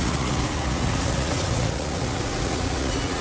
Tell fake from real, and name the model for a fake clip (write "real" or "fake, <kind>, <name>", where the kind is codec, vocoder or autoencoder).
fake, vocoder, Vocos